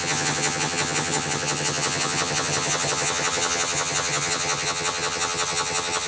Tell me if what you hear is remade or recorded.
remade